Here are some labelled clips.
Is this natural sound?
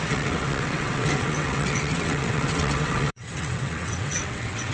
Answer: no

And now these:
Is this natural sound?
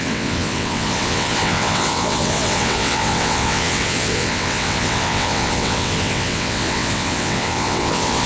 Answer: no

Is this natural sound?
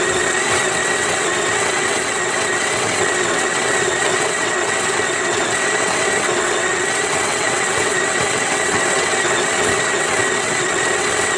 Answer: no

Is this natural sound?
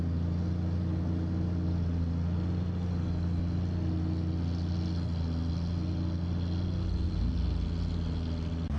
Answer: yes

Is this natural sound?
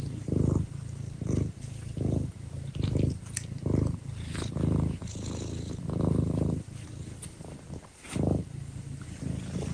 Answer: yes